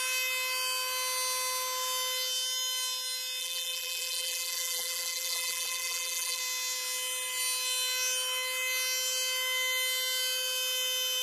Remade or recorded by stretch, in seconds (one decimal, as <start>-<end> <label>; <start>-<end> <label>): 0.0-3.4 recorded; 3.4-6.4 remade; 6.4-11.2 recorded